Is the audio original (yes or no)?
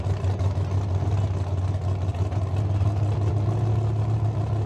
yes